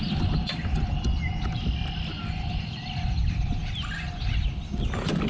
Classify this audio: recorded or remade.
recorded